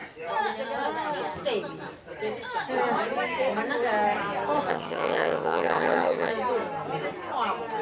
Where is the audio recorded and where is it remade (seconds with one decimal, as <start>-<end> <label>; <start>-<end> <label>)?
0.0-4.7 recorded; 4.7-6.3 remade; 6.3-7.8 recorded